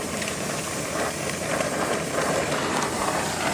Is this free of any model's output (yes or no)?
no